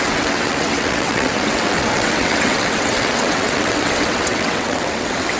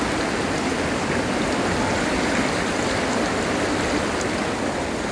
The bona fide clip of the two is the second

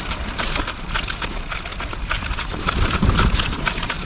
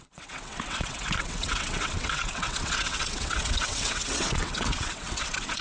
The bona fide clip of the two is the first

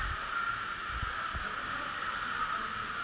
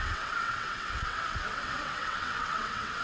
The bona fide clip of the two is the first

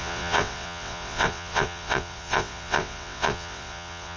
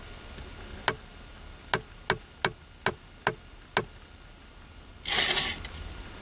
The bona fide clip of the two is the second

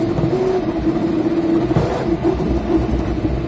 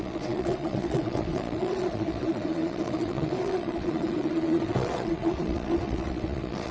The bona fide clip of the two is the first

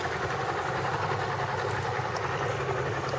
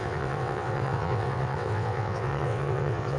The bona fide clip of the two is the first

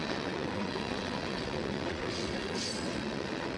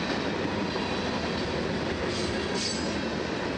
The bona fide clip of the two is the second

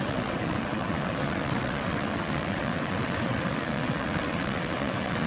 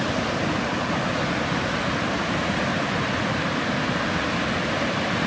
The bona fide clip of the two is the second